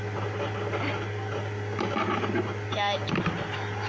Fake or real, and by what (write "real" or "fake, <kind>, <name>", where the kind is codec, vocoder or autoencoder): real